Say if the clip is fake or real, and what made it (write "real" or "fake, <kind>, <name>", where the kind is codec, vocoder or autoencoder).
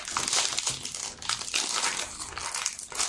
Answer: real